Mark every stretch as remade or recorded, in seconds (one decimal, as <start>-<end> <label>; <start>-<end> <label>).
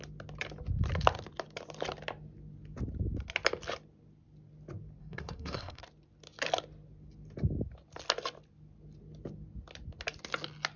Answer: 0.0-5.0 recorded; 5.0-5.8 remade; 5.8-10.8 recorded